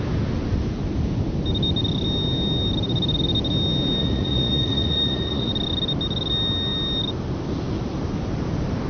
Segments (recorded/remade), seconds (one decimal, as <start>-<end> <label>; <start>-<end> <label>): 0.0-4.0 recorded; 4.0-5.5 remade; 5.5-8.9 recorded